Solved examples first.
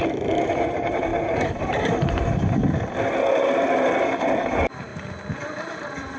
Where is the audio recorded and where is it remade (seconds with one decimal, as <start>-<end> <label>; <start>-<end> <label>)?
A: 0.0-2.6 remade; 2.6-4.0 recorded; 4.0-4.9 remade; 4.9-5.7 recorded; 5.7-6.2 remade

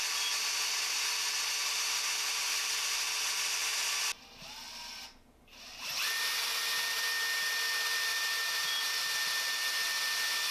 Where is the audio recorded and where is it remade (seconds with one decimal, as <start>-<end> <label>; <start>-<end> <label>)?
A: 0.0-1.6 recorded; 1.6-3.0 remade; 3.0-8.1 recorded; 8.1-8.8 remade; 8.8-10.5 recorded

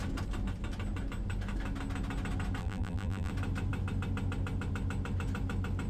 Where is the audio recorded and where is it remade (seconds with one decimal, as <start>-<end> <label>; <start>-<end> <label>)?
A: 0.0-2.6 recorded; 2.6-3.3 remade; 3.3-5.9 recorded

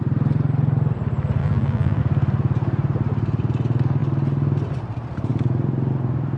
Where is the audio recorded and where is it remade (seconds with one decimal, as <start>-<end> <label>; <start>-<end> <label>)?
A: 0.0-1.4 recorded; 1.4-2.0 remade; 2.0-6.4 recorded